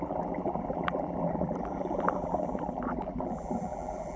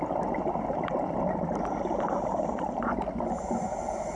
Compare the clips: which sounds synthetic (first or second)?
first